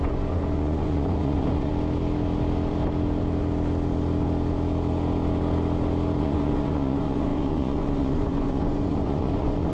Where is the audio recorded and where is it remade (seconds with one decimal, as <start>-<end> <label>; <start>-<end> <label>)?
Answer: 0.0-1.7 remade; 1.7-6.2 recorded; 6.2-9.7 remade